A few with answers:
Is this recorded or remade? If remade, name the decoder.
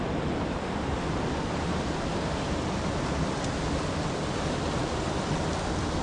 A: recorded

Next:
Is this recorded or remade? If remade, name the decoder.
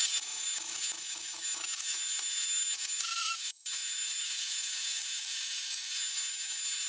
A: remade, autoencoder, DAC-VAE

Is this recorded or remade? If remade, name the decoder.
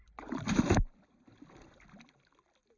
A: recorded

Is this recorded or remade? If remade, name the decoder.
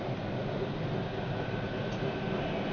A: recorded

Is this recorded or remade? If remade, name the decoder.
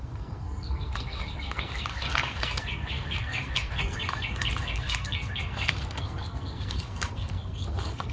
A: remade, codec, SNAC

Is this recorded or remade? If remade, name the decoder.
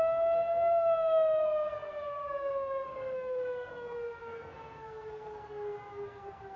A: remade, codec, SNAC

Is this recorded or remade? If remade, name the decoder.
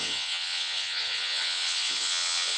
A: remade, vocoder, WaveNeXt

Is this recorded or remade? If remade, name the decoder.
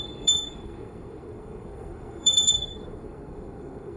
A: remade, codec, SNAC